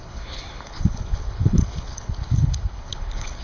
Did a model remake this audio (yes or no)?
yes